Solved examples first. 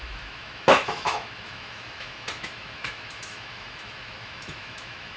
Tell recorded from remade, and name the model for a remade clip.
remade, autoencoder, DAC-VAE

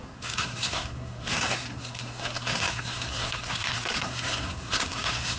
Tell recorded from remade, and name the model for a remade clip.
remade, codec, SNAC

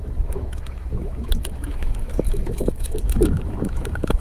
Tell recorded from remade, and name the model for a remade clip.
remade, autoencoder, DAC-VAE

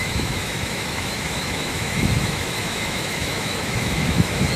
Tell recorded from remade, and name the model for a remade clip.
remade, autoencoder, DAC-VAE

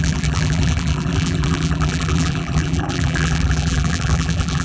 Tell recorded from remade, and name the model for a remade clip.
remade, vocoder, BigVGAN v2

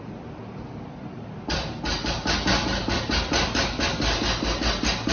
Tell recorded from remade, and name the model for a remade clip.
recorded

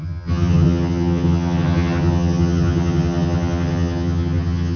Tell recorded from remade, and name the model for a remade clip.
remade, vocoder, HiFi-GAN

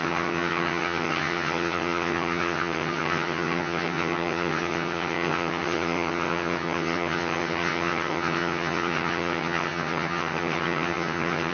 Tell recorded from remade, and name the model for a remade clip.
remade, vocoder, HiFi-GAN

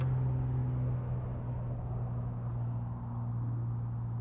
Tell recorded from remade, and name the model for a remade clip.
recorded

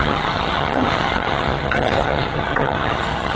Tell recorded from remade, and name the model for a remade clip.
remade, vocoder, HiFi-GAN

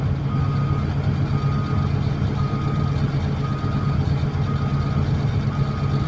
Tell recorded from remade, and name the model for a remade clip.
recorded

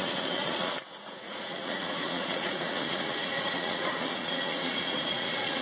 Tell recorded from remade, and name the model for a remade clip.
remade, vocoder, Vocos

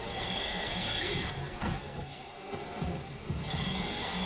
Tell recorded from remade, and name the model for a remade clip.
remade, codec, SNAC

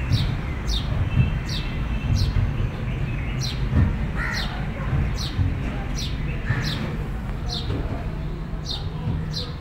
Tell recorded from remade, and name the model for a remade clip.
remade, vocoder, BigVGAN v2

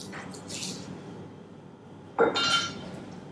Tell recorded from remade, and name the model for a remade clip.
recorded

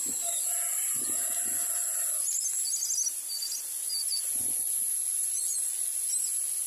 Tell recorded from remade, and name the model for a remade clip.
recorded